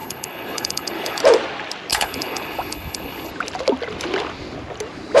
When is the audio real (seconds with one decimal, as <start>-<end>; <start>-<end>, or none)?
1.2-1.9; 3.3-5.2